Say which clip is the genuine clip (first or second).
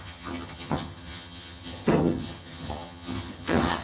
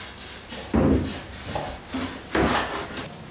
second